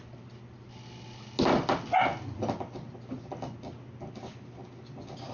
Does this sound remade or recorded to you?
recorded